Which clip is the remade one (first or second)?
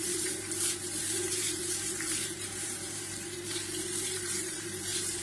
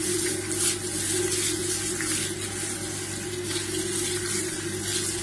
first